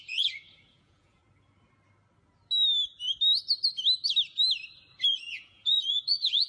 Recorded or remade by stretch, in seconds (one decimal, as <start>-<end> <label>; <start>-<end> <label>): 0.0-1.2 remade; 1.2-5.1 recorded; 5.1-6.5 remade